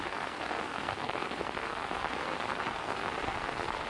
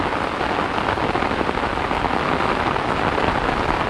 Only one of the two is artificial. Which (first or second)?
first